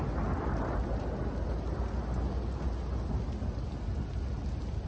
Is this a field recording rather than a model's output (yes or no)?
yes